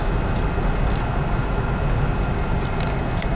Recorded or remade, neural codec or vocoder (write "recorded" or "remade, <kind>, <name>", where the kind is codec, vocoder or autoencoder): recorded